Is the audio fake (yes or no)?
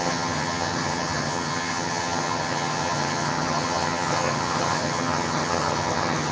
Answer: yes